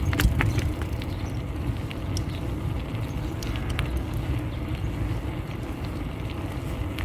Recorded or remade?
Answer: recorded